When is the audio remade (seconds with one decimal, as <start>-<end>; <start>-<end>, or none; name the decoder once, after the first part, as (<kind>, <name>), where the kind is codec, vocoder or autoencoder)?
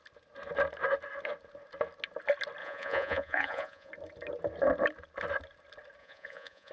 2.6-3.9 (vocoder, Vocos); 6.0-6.7